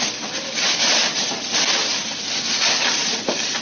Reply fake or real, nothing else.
real